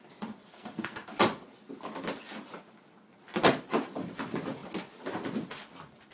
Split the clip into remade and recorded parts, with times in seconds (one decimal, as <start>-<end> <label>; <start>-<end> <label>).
0.0-0.5 recorded; 0.5-1.1 remade; 1.1-6.1 recorded